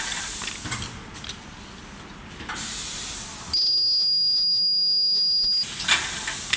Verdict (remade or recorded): recorded